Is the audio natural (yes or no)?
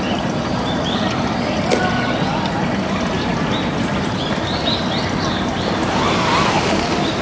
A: yes